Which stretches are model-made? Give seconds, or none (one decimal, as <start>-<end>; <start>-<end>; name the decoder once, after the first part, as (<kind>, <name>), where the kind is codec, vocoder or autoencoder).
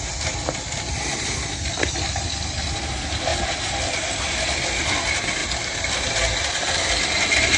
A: 3.3-4.1 (vocoder, BigVGAN v2)